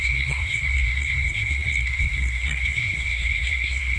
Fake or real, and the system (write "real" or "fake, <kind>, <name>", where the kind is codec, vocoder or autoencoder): fake, codec, SNAC